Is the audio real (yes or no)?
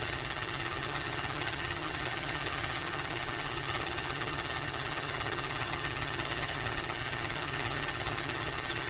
no